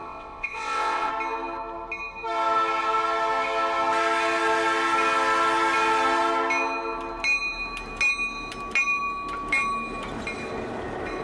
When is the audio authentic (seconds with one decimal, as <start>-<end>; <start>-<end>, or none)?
1.1-11.2